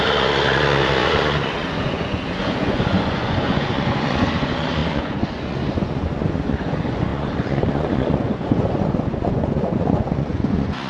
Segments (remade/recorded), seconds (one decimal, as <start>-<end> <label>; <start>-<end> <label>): 0.0-10.9 remade